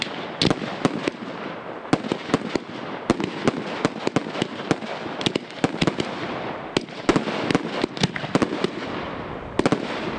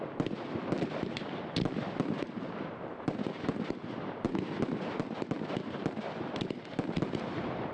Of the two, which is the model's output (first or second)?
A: second